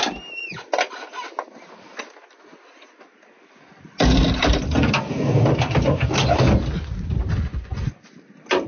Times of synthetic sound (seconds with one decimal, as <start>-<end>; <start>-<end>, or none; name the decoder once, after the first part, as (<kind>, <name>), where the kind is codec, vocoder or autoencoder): 7.5-8.0 (vocoder, Vocos)